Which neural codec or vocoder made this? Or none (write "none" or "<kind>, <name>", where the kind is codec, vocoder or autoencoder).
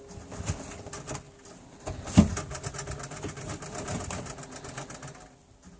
none